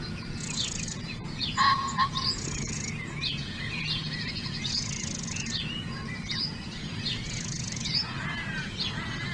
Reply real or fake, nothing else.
fake